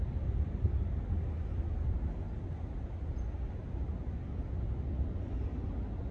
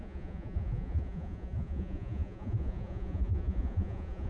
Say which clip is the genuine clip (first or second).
first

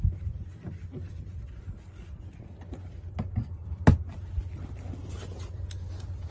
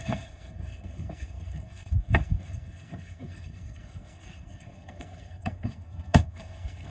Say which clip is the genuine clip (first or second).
first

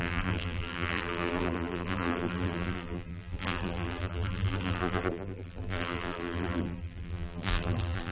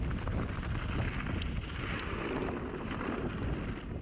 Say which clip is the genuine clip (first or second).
second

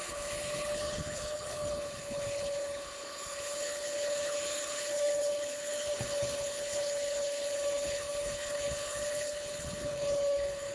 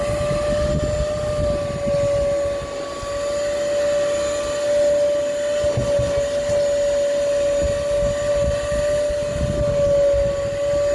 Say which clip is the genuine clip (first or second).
second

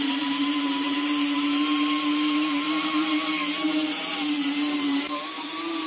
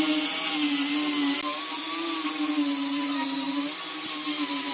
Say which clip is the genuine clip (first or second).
second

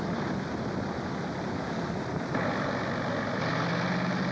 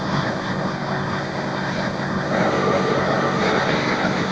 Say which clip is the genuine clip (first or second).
first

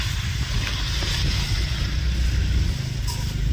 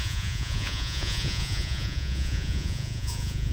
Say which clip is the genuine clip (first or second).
first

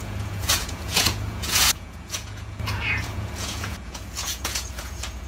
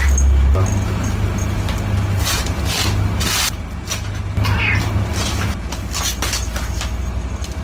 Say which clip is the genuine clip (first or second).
second